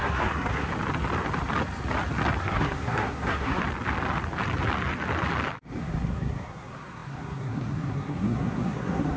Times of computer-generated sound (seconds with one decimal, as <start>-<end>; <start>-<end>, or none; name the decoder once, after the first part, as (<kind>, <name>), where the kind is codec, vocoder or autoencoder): 0.0-0.7 (codec, SNAC); 2.4-3.6; 5.8-9.2